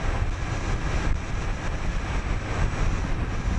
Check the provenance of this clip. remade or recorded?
recorded